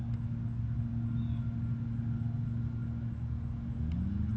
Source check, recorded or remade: recorded